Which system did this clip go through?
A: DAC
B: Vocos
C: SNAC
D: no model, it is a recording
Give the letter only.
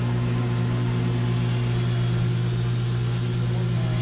D